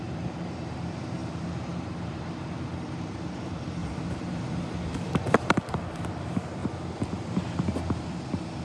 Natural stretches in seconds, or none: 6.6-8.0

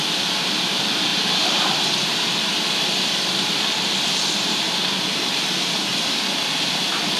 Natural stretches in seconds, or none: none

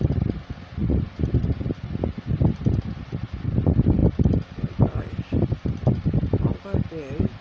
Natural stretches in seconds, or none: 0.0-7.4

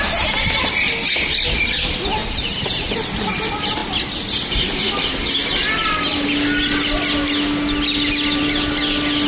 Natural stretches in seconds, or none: 0.0-2.2; 3.3-9.3